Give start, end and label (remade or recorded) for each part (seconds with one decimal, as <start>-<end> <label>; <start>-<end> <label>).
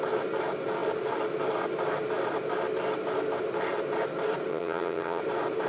0.0-4.5 recorded; 4.5-5.2 remade; 5.2-5.7 recorded